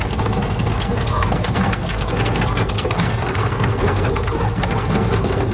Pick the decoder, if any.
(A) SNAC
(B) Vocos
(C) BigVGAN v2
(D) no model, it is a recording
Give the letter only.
A